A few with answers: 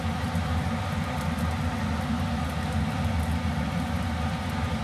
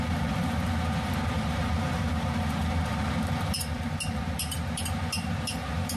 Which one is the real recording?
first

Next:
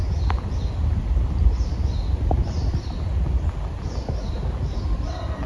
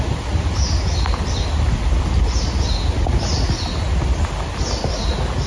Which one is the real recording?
second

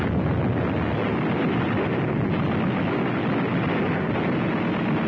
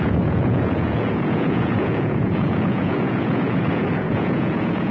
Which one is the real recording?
first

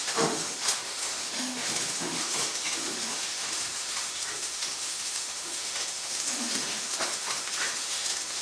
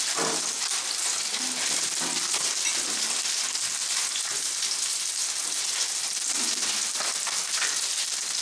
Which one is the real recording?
second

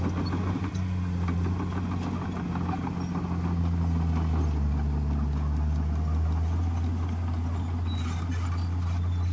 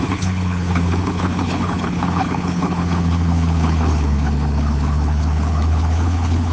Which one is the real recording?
first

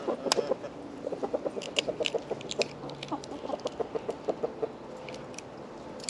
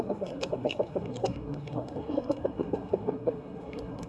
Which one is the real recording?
first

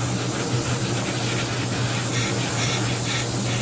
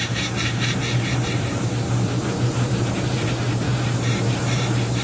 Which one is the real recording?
first